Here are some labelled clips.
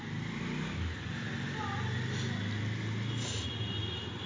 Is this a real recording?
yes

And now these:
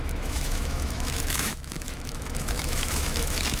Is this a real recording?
no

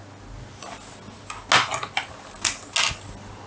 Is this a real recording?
yes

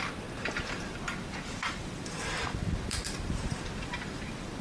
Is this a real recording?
no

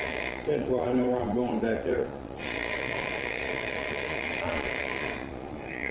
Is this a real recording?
no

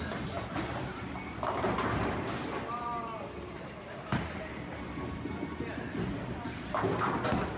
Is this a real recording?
yes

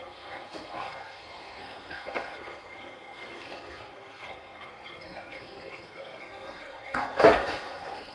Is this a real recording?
no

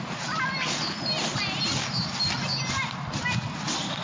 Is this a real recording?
yes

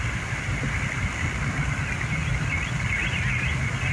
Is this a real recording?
yes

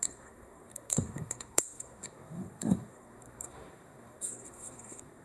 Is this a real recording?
no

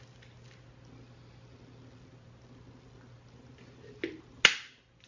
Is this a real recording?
yes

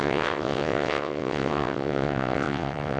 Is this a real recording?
no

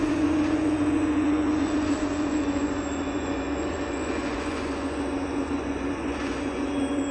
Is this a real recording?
no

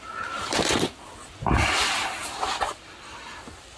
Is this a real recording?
yes